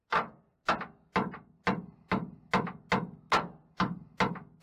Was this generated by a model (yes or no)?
no